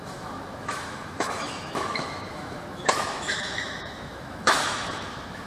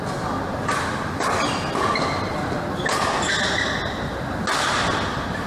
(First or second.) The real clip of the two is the second